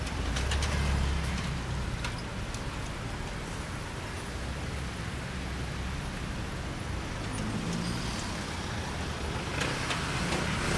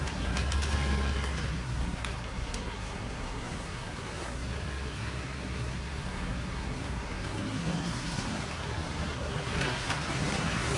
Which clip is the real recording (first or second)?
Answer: first